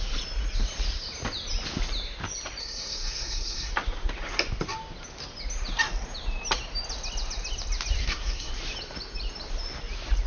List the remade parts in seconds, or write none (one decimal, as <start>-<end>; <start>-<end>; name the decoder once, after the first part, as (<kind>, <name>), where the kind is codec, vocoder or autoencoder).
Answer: 2.6-3.7 (codec, SNAC); 8.0-8.5